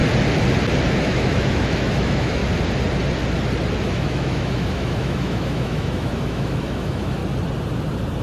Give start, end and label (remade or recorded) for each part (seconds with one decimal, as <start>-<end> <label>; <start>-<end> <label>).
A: 0.0-0.9 recorded; 0.9-2.4 remade; 2.4-3.8 recorded; 3.8-7.2 remade; 7.2-8.2 recorded

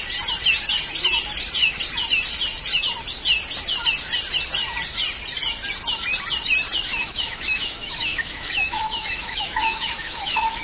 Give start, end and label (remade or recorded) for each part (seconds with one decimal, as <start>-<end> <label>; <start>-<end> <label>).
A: 0.0-6.9 recorded; 6.9-10.6 remade

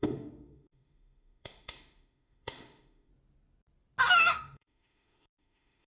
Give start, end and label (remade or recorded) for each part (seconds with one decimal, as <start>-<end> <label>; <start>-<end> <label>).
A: 0.0-3.1 remade; 3.1-4.1 recorded; 4.1-5.9 remade

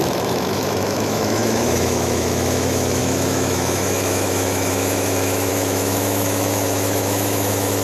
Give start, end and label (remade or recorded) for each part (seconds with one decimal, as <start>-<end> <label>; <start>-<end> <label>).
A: 0.0-7.8 remade

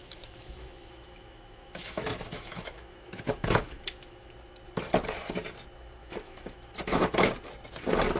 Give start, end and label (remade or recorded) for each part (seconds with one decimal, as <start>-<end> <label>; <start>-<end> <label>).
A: 0.0-4.3 remade; 4.3-6.0 recorded; 6.0-7.3 remade; 7.3-8.2 recorded